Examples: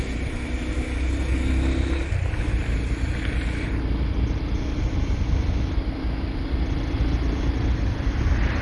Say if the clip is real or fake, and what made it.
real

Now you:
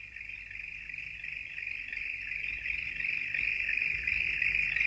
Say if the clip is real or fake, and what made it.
fake, vocoder, BigVGAN v2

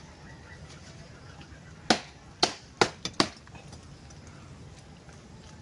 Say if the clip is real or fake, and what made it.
real